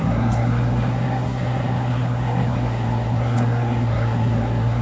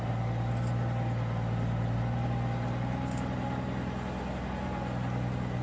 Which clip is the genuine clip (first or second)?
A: second